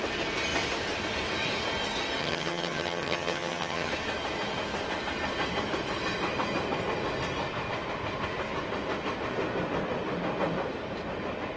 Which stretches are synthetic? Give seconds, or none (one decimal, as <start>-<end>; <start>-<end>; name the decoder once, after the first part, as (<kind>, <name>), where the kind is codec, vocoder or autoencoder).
2.2-3.9 (vocoder, HiFi-GAN)